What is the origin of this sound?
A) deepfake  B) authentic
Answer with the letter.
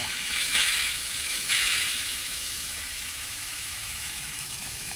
A